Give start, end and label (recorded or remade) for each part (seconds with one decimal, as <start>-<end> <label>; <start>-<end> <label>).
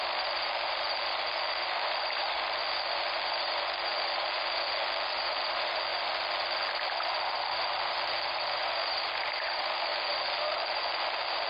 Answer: 0.0-2.6 remade; 2.6-5.2 recorded; 5.2-5.9 remade; 5.9-6.7 recorded; 6.7-9.9 remade; 9.9-10.7 recorded; 10.7-11.5 remade